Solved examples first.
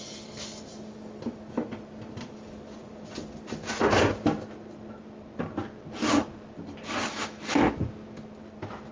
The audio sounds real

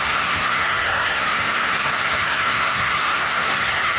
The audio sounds fake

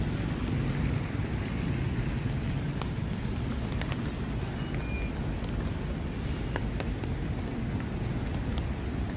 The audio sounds real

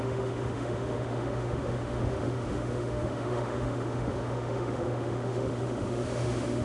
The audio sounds fake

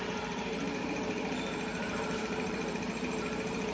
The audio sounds fake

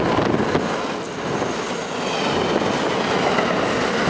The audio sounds real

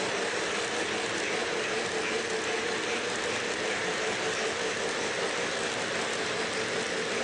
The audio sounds real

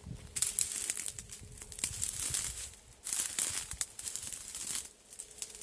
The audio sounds real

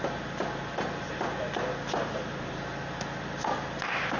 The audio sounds real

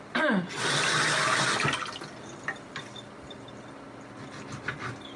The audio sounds real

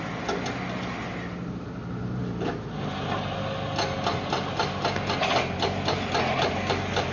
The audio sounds real